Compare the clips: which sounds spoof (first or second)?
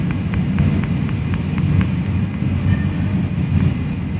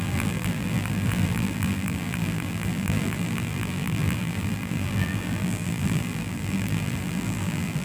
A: second